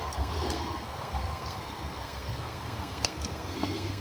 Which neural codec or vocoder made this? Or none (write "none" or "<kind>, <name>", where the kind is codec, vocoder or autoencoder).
codec, SNAC